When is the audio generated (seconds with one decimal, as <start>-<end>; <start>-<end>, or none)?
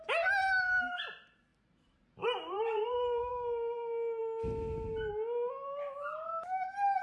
1.5-3.3